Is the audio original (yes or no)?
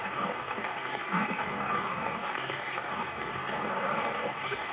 no